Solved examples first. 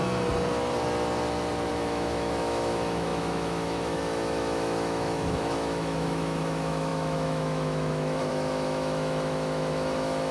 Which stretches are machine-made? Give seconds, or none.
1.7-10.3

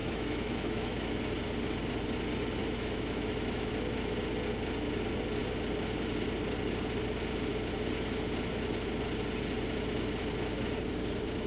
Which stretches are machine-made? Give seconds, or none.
0.0-1.2; 2.6-3.7

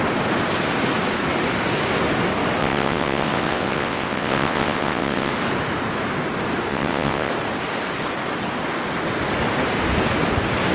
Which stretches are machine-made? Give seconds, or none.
2.6-5.3; 6.7-7.3

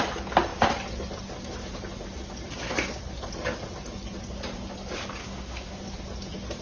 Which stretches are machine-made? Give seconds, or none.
5.2-5.8

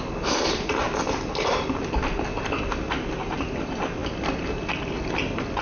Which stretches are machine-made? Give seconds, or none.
none

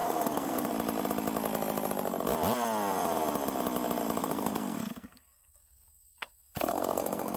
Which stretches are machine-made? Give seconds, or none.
0.0-0.7; 4.2-7.4

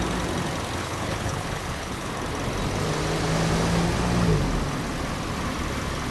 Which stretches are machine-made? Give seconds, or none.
0.8-2.1